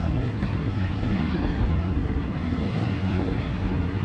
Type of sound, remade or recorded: remade